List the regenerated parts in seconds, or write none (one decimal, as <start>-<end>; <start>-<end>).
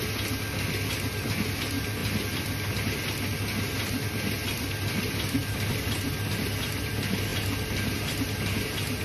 5.4-6.1